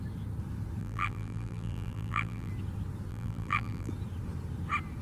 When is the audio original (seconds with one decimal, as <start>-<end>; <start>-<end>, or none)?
0.0-0.8; 2.5-3.1; 3.9-5.0